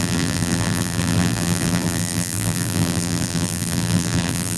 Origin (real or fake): fake